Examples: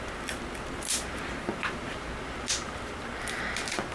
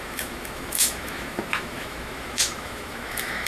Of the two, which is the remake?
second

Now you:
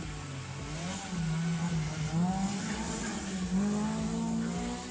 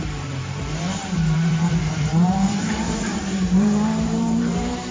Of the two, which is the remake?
second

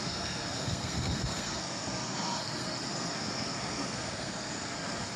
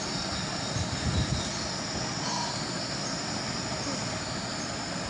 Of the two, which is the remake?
first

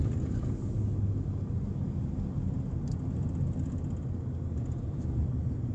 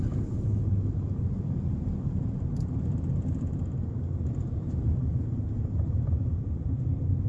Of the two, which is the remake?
second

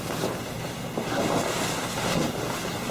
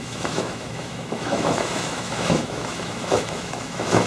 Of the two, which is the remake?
second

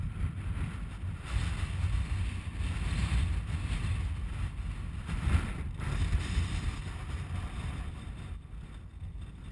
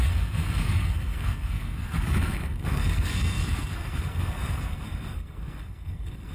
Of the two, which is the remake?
second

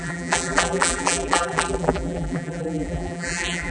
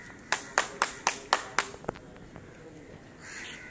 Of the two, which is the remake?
first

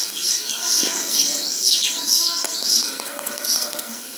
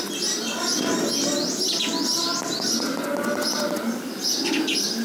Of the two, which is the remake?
first